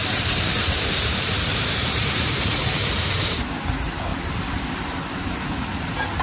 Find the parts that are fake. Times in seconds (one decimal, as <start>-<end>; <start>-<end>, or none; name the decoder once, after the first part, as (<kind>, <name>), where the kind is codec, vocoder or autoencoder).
0.0-3.5 (vocoder, BigVGAN v2); 4.1-4.8